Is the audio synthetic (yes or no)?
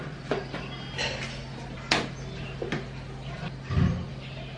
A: no